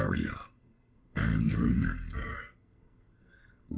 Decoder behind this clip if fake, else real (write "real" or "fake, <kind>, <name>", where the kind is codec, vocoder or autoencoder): fake, codec, SNAC